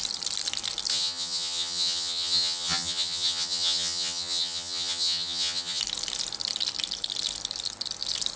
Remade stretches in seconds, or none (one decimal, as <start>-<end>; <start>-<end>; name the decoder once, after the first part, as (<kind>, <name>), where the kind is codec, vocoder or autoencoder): 0.9-5.8 (vocoder, HiFi-GAN)